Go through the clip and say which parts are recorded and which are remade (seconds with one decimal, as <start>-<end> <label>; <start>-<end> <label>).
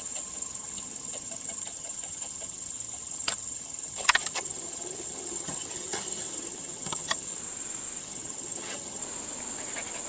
0.0-7.4 remade; 7.4-8.0 recorded; 8.0-9.0 remade; 9.0-10.1 recorded